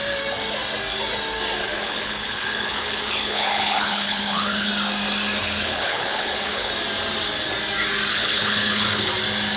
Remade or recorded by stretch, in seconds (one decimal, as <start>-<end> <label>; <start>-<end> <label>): 0.0-1.6 recorded; 1.6-4.7 remade; 4.7-5.4 recorded; 5.4-6.7 remade; 6.7-8.1 recorded; 8.1-9.1 remade; 9.1-9.6 recorded

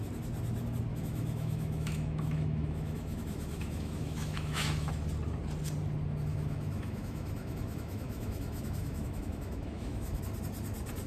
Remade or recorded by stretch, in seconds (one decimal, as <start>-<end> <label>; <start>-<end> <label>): 0.0-0.9 recorded; 0.9-4.9 remade; 4.9-6.3 recorded; 6.3-10.2 remade; 10.2-11.1 recorded

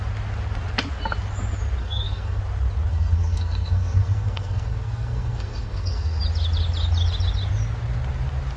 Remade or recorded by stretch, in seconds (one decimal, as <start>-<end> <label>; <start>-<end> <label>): 0.0-1.8 recorded; 1.8-2.4 remade; 2.4-2.9 recorded; 2.9-6.2 remade; 6.2-8.6 recorded

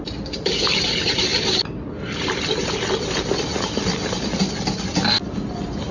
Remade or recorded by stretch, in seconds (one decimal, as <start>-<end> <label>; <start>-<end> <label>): 0.0-5.9 recorded